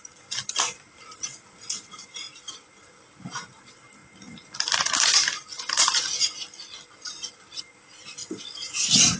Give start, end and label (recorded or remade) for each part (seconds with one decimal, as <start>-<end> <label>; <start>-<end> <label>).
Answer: 0.0-4.0 remade; 4.0-7.6 recorded; 7.6-8.2 remade; 8.2-9.2 recorded